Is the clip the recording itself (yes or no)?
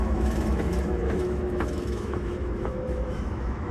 no